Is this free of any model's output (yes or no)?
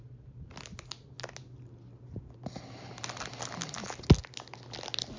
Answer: yes